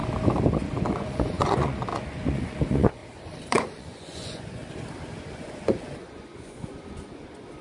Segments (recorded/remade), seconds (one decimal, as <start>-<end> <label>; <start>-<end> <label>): 0.0-0.9 recorded; 0.9-3.0 remade; 3.0-3.5 recorded; 3.5-4.6 remade; 4.6-5.2 recorded; 5.2-7.6 remade